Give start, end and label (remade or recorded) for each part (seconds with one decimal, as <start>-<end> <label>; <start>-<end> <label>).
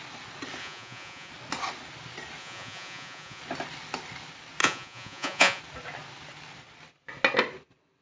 0.0-0.6 recorded; 0.6-1.3 remade; 1.3-2.4 recorded; 2.4-3.4 remade; 3.4-4.6 recorded; 4.6-5.6 remade; 5.6-8.0 recorded